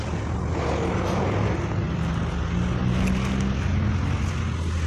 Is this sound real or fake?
real